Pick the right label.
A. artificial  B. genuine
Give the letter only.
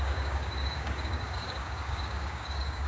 A